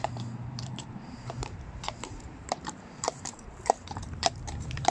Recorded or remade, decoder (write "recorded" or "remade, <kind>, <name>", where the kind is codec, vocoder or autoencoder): remade, vocoder, BigVGAN v2